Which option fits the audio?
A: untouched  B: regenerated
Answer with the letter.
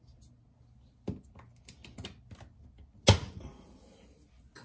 A